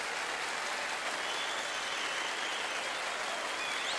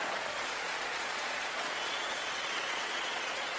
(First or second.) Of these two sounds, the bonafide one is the first